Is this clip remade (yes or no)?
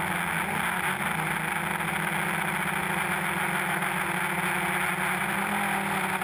no